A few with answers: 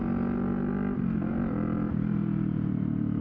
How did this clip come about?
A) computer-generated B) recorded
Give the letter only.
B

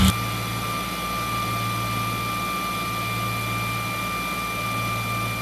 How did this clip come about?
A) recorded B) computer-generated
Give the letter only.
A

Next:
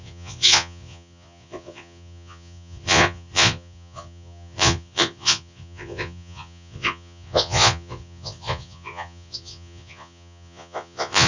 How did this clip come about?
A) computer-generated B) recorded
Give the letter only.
A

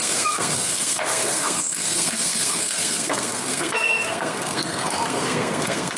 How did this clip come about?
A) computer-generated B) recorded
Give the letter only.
A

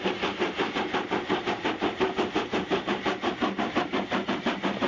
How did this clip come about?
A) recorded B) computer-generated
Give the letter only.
B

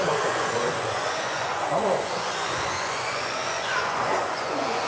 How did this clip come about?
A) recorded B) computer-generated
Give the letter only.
B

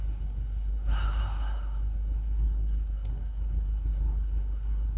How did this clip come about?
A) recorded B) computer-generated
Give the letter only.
B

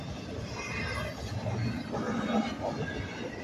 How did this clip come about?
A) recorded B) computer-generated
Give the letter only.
A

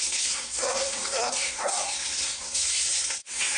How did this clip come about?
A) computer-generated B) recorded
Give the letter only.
A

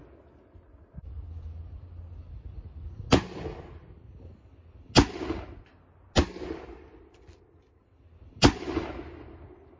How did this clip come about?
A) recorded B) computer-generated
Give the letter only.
A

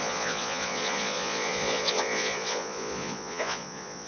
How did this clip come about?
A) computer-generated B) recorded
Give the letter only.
A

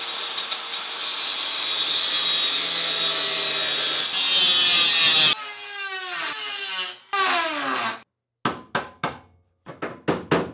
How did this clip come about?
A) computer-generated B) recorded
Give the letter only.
B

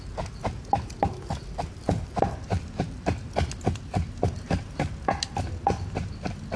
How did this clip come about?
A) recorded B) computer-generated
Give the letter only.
A